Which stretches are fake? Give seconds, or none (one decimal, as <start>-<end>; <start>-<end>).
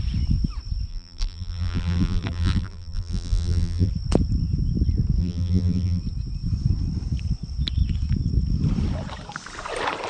0.9-3.9; 5.2-6.0